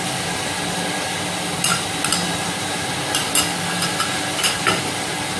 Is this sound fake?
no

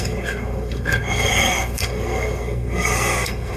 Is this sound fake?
yes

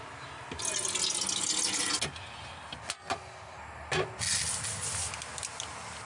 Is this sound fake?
no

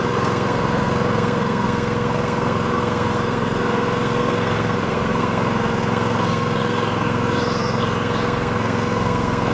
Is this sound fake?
yes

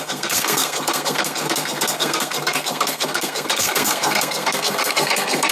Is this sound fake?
yes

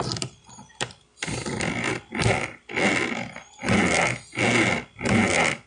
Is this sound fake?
no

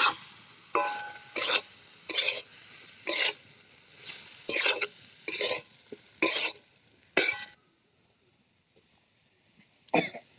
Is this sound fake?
no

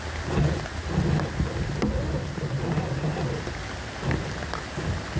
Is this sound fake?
no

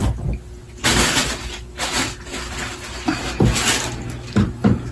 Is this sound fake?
no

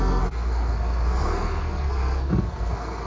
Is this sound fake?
yes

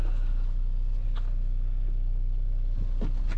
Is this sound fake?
no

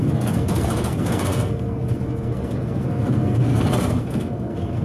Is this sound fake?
yes